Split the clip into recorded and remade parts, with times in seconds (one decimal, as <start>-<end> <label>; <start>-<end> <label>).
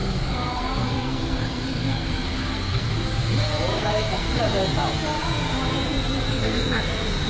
0.0-2.9 remade; 2.9-3.7 recorded; 3.7-4.4 remade; 4.4-6.3 recorded; 6.3-6.8 remade; 6.8-7.3 recorded